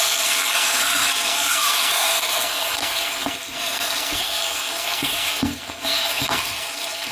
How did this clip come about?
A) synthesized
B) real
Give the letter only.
A